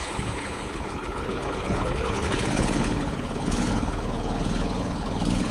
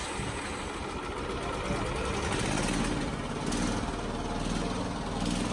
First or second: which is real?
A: second